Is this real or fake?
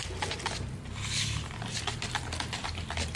real